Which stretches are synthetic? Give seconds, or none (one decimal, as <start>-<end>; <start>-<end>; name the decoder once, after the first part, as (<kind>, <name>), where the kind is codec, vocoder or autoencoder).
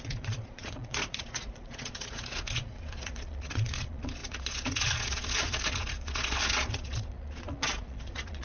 0.0-8.4 (vocoder, Vocos)